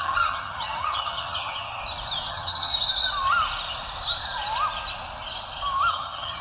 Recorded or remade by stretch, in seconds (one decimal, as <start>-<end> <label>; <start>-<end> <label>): 0.0-1.8 remade; 1.8-2.3 recorded; 2.3-2.7 remade; 2.7-5.9 recorded; 5.9-6.4 remade